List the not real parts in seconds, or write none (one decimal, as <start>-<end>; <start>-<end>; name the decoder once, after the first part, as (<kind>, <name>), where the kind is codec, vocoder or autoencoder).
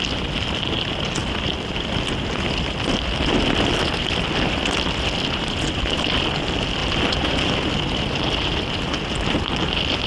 1.2-2.1 (vocoder, BigVGAN v2); 6.8-8.3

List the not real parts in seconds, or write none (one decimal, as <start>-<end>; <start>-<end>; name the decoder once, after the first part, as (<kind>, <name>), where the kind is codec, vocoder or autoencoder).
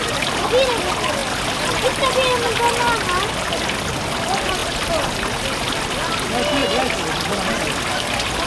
none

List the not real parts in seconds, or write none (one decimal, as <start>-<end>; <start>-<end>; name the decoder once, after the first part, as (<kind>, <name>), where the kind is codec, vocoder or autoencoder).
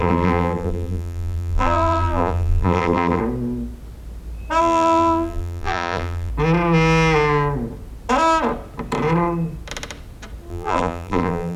0.0-3.2 (vocoder, BigVGAN v2); 4.6-6.3; 10.5-11.6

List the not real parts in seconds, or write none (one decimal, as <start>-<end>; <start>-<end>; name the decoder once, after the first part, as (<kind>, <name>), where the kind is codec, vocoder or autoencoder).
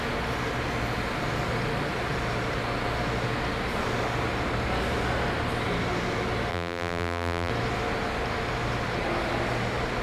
6.5-7.5 (vocoder, BigVGAN v2)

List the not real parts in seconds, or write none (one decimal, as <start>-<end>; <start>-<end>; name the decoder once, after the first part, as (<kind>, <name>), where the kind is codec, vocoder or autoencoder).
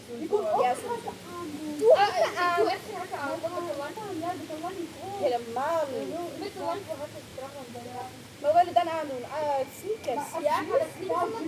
none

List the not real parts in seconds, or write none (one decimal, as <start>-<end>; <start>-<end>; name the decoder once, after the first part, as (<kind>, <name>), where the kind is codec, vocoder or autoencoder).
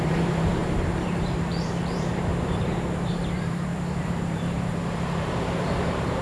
0.0-2.3 (vocoder, BigVGAN v2); 3.1-6.2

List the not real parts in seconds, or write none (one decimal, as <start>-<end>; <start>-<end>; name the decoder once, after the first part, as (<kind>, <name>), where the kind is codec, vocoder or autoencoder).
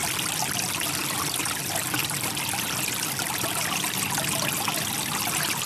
none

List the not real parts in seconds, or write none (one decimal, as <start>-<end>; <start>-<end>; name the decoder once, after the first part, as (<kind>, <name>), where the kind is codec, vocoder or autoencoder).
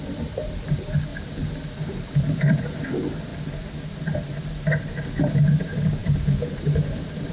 0.0-1.1 (vocoder, BigVGAN v2); 1.8-3.3; 5.6-7.3